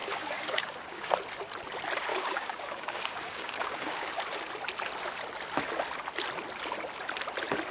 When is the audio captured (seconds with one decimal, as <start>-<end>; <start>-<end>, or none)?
1.1-2.1; 4.1-7.7